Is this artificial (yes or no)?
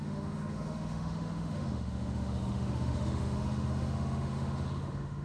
yes